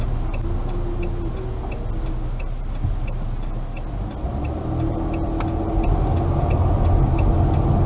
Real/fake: real